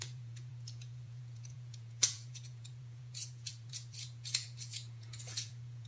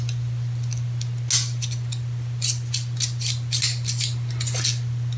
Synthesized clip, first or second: first